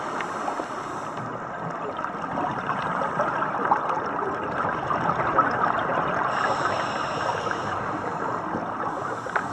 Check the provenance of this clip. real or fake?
real